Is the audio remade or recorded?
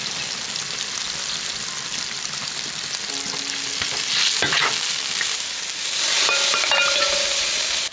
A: recorded